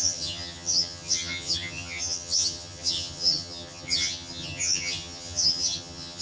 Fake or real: fake